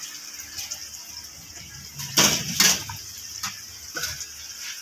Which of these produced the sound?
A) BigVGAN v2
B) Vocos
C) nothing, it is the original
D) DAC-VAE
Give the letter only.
C